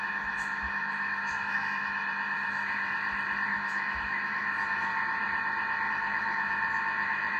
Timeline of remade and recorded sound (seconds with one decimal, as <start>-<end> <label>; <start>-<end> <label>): 0.0-2.6 remade; 2.6-3.5 recorded; 3.5-4.9 remade; 4.9-5.9 recorded; 5.9-7.4 remade